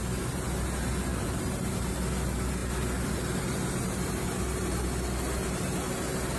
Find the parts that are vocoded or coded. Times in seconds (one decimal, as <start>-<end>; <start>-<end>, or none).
none